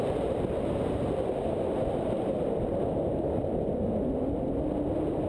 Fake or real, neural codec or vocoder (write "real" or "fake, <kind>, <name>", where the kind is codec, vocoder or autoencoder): real